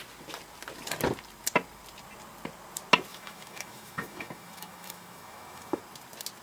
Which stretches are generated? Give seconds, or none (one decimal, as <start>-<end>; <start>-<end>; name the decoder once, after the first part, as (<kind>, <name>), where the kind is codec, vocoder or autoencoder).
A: 3.1-5.8 (autoencoder, DAC-VAE)

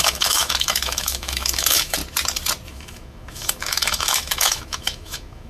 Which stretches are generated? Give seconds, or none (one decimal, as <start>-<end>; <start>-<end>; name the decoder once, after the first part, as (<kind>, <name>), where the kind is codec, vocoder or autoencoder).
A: 0.0-2.0 (autoencoder, DAC-VAE); 2.7-5.5

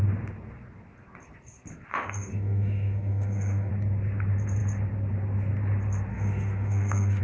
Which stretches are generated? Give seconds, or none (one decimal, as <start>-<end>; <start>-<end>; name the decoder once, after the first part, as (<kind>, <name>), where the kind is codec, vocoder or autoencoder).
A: 1.9-3.7 (autoencoder, DAC-VAE); 6.1-7.2

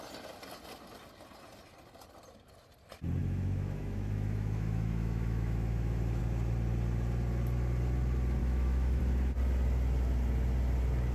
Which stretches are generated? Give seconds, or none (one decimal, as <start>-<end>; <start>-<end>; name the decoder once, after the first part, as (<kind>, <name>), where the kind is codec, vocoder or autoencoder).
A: 3.2-6.2 (autoencoder, DAC-VAE); 8.4-9.0

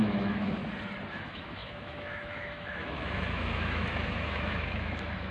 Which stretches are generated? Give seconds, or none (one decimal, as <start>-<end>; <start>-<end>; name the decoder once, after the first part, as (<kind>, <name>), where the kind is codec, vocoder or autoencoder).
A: 0.0-0.6 (autoencoder, DAC-VAE); 1.1-5.3